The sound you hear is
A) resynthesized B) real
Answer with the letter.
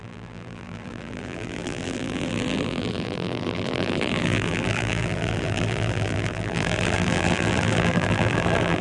A